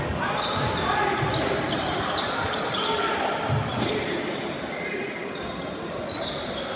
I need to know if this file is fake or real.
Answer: fake